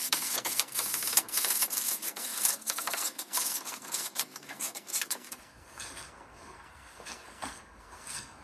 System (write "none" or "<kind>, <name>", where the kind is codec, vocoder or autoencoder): codec, SNAC